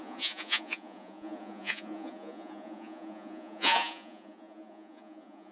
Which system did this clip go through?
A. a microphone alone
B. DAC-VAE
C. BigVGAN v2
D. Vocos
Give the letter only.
D